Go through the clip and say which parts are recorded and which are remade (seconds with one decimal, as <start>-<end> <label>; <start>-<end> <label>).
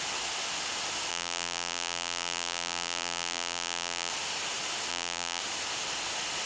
0.0-1.1 recorded; 1.1-4.1 remade; 4.1-4.9 recorded; 4.9-5.4 remade; 5.4-6.5 recorded